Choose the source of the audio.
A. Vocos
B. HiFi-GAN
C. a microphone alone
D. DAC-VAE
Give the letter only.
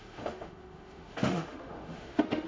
D